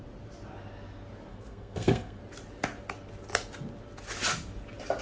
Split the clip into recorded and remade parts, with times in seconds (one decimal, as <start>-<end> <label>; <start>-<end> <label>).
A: 0.0-1.3 recorded; 1.3-2.2 remade; 2.2-5.0 recorded